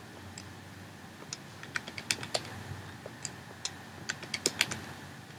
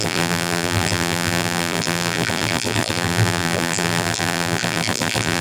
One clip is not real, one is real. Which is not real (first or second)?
second